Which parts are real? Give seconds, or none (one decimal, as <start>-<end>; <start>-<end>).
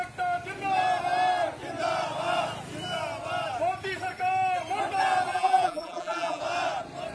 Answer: 0.0-5.3; 6.4-7.1